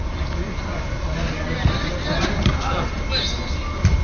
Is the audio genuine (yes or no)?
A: yes